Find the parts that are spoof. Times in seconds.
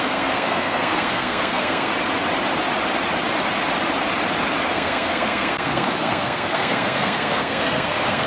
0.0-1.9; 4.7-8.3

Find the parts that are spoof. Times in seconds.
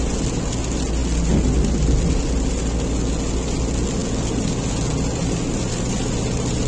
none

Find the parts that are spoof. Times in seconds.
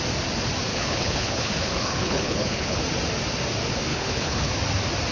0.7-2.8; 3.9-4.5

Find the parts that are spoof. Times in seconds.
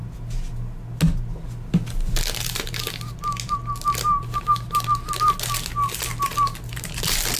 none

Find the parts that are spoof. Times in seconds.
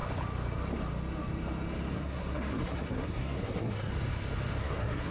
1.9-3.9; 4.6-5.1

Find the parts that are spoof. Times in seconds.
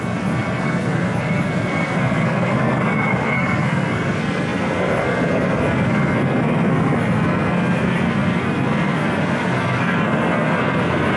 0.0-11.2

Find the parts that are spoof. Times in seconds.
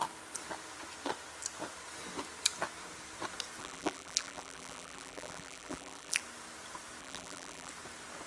3.6-6.2; 7.0-7.7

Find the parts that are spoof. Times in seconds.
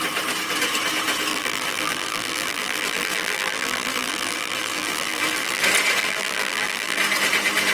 1.3-5.6; 6.0-7.0